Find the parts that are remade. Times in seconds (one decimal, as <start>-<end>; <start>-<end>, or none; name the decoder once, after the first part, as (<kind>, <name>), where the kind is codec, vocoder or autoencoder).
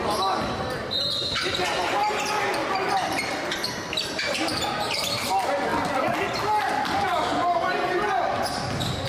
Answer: 2.6-5.3 (vocoder, BigVGAN v2)